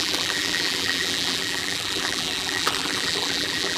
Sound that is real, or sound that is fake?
fake